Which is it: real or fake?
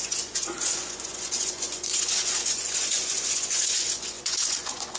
fake